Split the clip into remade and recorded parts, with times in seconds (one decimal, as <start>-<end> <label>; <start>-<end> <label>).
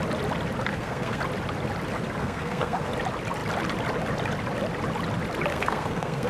0.0-0.7 recorded; 0.7-1.2 remade; 1.2-2.2 recorded; 2.2-2.9 remade; 2.9-5.5 recorded; 5.5-6.3 remade